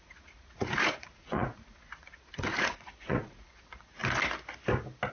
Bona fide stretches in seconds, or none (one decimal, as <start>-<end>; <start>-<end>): 4.0-5.1